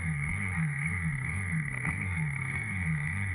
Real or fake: fake